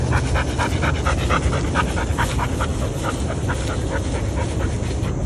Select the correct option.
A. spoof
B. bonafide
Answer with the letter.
B